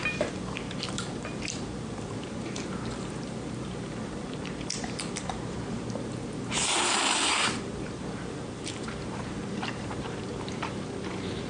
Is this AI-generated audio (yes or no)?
yes